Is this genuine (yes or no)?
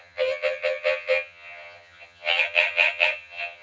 no